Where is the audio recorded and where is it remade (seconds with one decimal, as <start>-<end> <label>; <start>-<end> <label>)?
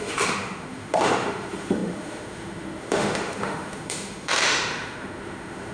0.0-5.7 remade